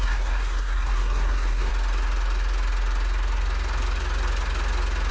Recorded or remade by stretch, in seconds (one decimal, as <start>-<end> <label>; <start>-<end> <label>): 0.0-1.7 remade; 1.7-5.1 recorded